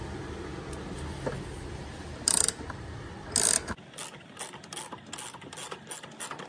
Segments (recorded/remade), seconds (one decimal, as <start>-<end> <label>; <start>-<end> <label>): 0.0-6.5 recorded